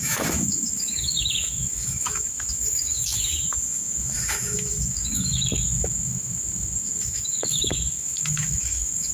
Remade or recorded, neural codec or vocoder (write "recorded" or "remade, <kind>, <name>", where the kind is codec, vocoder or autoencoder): remade, autoencoder, DAC-VAE